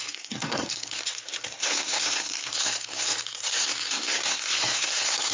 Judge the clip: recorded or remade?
remade